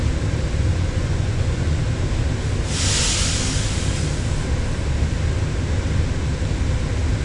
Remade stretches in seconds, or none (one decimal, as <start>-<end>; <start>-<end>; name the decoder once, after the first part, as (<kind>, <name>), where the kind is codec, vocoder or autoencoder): 0.7-1.8 (vocoder, Vocos)